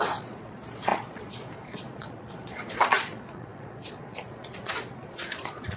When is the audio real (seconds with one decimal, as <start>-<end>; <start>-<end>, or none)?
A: none